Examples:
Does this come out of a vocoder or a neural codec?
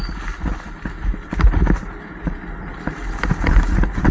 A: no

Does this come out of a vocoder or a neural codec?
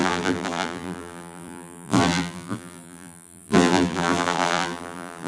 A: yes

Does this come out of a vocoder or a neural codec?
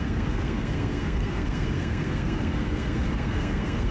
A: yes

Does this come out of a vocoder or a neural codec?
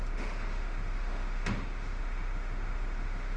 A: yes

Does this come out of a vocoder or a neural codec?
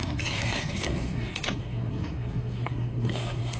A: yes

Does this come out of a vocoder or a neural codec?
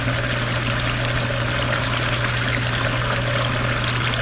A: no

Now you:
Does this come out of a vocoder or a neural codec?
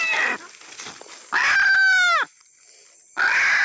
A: no